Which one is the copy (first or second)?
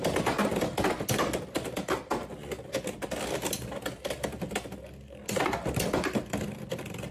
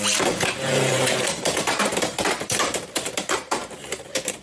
second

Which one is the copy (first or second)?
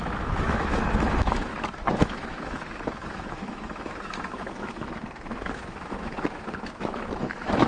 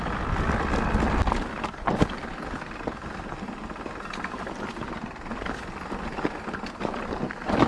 first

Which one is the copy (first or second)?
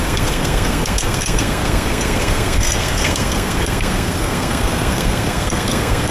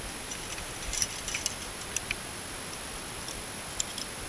first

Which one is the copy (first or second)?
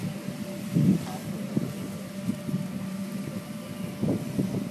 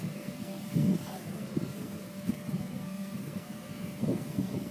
second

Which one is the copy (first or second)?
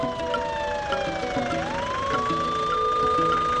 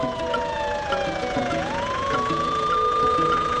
second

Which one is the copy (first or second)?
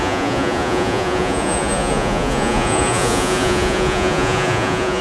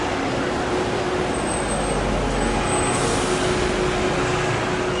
first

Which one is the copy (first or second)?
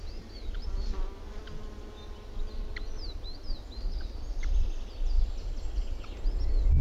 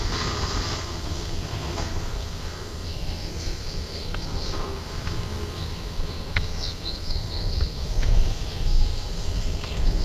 second